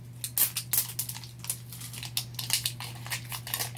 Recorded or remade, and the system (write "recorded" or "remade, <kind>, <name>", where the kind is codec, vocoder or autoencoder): recorded